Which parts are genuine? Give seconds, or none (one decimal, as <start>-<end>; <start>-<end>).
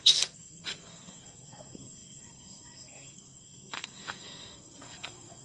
none